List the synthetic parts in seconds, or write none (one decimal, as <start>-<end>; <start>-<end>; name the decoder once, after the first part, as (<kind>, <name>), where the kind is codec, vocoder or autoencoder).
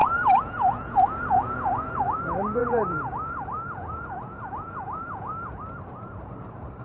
0.0-2.2 (vocoder, Vocos); 2.6-5.5